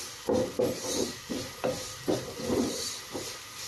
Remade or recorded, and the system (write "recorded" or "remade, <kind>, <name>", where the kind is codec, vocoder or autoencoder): recorded